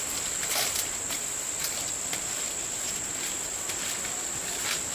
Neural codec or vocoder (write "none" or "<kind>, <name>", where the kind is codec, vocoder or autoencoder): vocoder, BigVGAN v2